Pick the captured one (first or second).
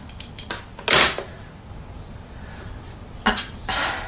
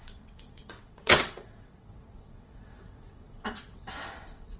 first